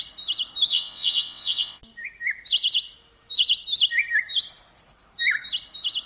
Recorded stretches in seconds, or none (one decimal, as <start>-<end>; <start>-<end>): 0.0-0.7; 1.8-6.1